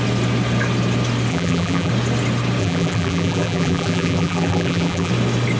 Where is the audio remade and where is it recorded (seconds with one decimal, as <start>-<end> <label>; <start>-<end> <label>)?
0.0-1.3 recorded; 1.3-1.9 remade; 1.9-2.6 recorded; 2.6-5.1 remade; 5.1-5.6 recorded